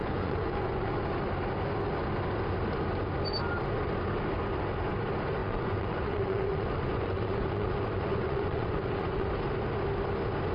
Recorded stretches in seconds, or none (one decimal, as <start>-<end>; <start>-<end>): 0.9-5.4; 9.3-10.5

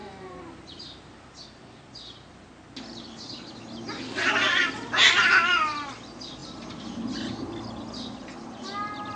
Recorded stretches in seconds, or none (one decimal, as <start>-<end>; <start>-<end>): 0.0-9.2

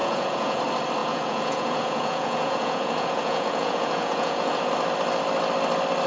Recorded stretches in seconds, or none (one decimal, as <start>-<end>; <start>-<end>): 0.6-1.0; 4.7-6.1

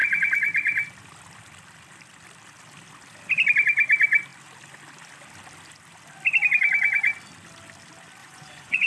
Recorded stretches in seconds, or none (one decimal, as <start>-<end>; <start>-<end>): 0.0-8.2

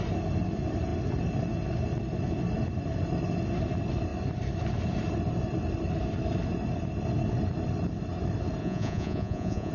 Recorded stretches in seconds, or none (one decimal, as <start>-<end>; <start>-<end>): 0.0-8.6

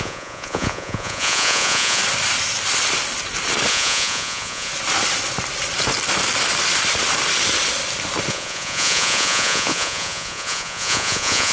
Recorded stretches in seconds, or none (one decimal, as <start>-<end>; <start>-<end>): 2.0-3.7; 4.7-8.3

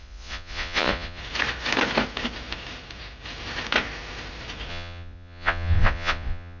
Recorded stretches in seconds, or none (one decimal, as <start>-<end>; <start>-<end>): 1.2-4.7

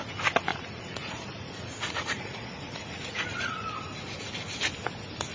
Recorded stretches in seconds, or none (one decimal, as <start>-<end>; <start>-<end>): 0.0-0.5; 3.7-5.3